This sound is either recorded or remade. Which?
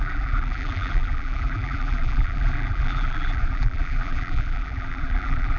remade